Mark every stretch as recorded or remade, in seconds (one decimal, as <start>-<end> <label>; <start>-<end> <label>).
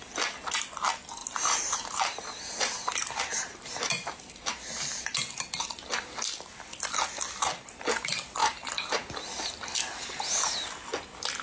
0.0-1.2 recorded; 1.2-5.4 remade; 5.4-8.4 recorded; 8.4-9.1 remade; 9.1-11.4 recorded